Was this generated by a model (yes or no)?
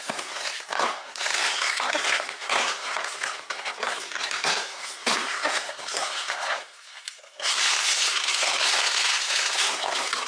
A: yes